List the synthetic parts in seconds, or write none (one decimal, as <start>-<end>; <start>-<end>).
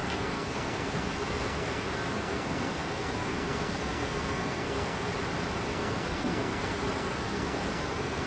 0.0-5.1; 5.7-8.3